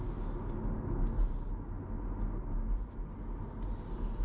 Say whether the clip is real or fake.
real